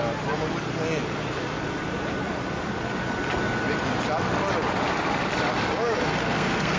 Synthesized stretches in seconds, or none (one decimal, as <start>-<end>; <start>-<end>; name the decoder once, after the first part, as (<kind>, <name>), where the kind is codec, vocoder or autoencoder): 6.2-6.8 (codec, SNAC)